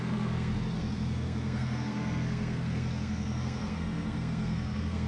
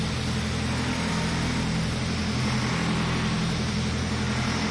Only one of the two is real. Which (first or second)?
second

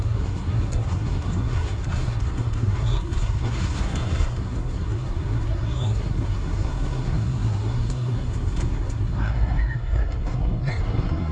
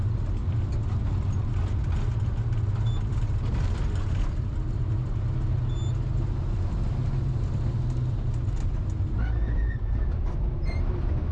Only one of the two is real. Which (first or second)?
second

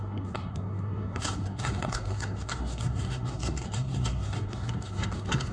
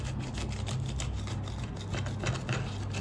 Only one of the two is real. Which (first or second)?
second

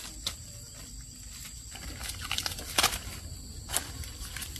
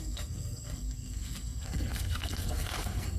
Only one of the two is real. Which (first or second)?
first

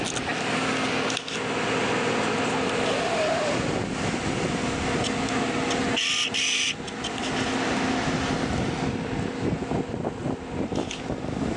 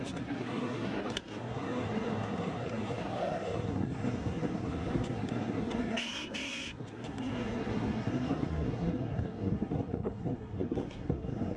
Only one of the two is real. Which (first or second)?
first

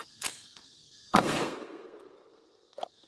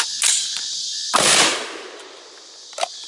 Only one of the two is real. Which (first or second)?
second